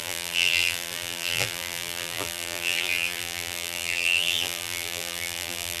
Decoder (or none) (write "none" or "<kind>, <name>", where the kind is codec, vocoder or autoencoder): vocoder, BigVGAN v2